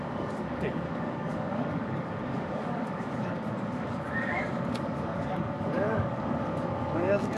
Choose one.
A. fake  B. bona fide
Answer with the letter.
A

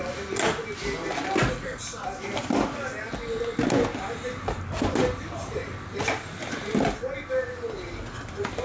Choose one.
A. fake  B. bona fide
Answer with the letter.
B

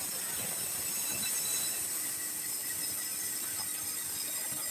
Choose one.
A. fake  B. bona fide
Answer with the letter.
B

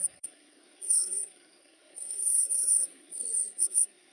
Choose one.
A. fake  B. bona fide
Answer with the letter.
A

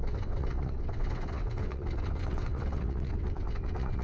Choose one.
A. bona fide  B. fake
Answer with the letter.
B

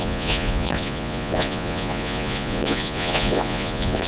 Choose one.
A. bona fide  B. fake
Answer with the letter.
B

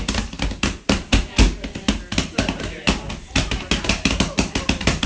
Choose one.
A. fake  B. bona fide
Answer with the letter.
B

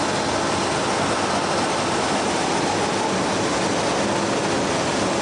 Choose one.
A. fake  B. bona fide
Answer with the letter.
B